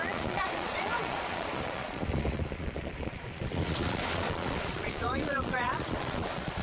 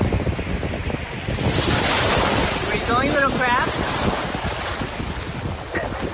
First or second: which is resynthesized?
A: first